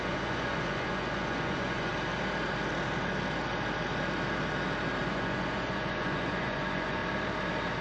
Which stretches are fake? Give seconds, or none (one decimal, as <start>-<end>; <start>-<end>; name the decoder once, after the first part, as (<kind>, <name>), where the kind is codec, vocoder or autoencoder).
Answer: 0.0-1.9 (vocoder, Vocos); 5.0-7.0